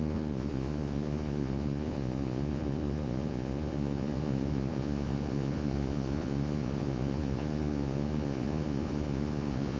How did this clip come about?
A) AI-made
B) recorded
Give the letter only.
A